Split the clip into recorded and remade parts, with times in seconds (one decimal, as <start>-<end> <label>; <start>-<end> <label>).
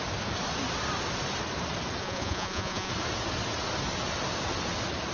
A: 0.0-2.0 recorded; 2.0-2.9 remade; 2.9-5.1 recorded